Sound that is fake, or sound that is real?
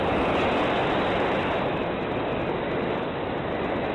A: real